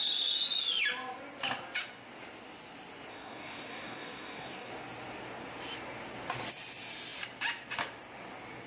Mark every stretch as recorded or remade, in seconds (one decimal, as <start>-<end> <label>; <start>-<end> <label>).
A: 0.0-3.1 recorded; 3.1-4.7 remade; 4.7-8.7 recorded